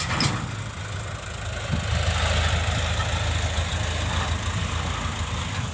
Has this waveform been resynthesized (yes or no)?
no